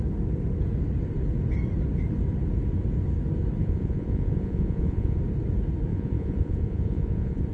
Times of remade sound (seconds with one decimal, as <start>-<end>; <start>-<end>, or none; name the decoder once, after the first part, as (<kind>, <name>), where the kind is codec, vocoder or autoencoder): 3.6-5.2 (vocoder, Vocos); 5.9-7.5